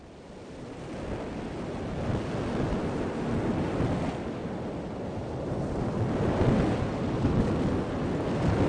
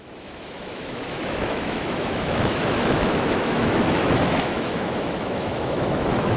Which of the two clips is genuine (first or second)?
first